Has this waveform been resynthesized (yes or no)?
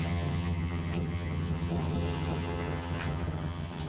yes